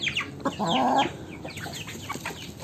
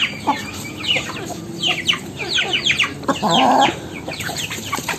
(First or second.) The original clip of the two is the first